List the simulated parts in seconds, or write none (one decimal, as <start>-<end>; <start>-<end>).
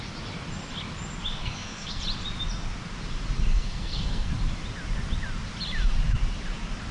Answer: 1.4-2.0; 3.5-4.3